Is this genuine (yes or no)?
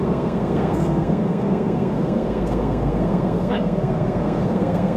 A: no